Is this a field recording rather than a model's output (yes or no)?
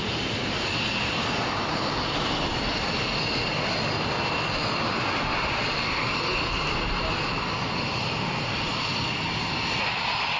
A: yes